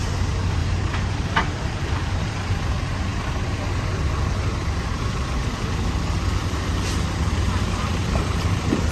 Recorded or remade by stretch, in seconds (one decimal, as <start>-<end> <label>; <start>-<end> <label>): 0.0-0.6 recorded; 0.6-2.7 remade; 2.7-6.4 recorded; 6.4-8.9 remade

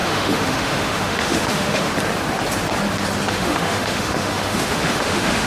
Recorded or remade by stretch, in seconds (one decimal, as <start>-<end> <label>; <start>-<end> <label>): 0.0-1.9 remade; 1.9-3.3 recorded; 3.3-5.5 remade

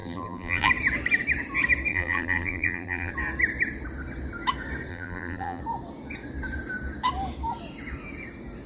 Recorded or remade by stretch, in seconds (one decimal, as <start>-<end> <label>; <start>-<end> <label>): 0.0-0.7 remade; 0.7-1.9 recorded; 1.9-3.1 remade; 3.1-4.9 recorded; 4.9-5.6 remade; 5.6-8.7 recorded

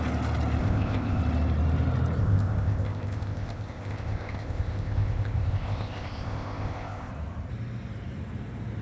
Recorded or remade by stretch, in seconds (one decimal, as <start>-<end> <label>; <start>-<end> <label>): 0.0-0.6 recorded; 0.6-1.2 remade; 1.2-2.2 recorded; 2.2-7.1 remade; 7.1-8.8 recorded

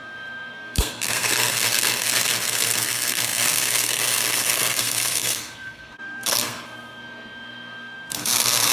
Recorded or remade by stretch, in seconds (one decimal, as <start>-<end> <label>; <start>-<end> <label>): 0.0-8.7 remade

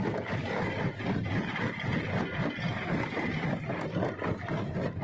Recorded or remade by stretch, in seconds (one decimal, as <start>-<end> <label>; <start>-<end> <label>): 0.0-5.0 recorded

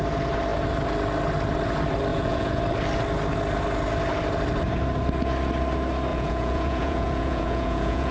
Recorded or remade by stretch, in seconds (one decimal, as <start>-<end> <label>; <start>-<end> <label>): 0.0-2.1 recorded; 2.1-2.6 remade; 2.6-6.1 recorded; 6.1-8.1 remade